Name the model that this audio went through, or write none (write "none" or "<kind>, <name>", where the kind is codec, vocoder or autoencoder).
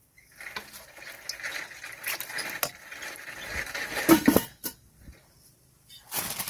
none